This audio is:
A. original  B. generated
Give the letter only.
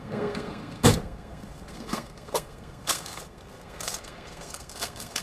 B